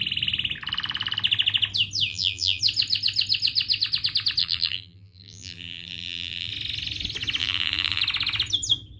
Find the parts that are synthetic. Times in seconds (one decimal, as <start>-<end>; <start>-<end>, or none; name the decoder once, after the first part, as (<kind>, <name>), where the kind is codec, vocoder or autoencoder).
2.1-2.6 (vocoder, BigVGAN v2); 4.4-6.5; 7.4-8.0